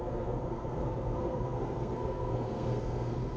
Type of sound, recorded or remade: remade